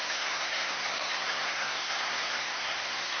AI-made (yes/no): yes